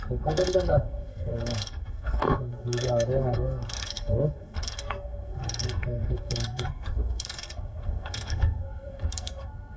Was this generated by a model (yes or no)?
yes